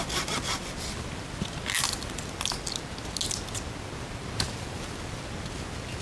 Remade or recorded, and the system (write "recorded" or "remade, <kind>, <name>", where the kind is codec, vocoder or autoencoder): recorded